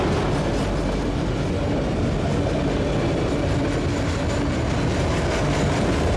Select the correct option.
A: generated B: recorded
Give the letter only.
B